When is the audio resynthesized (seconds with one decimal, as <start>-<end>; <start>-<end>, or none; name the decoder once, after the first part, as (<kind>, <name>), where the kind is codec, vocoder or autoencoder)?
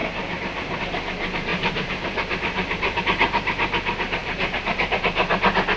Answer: 0.0-0.8 (vocoder, BigVGAN v2); 1.5-3.0; 4.2-5.0